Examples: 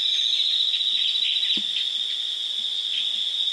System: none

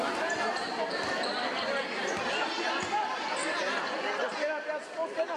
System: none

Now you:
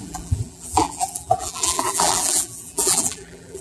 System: vocoder, BigVGAN v2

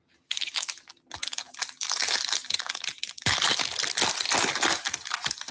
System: none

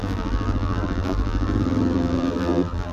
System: vocoder, BigVGAN v2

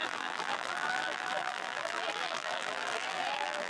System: vocoder, BigVGAN v2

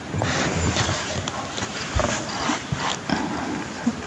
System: none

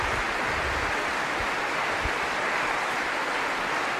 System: none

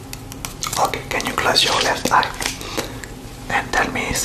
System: none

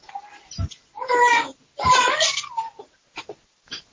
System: none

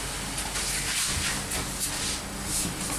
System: none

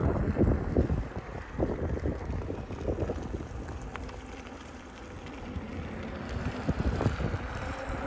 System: vocoder, BigVGAN v2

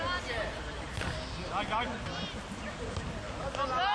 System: none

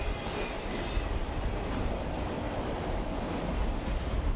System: none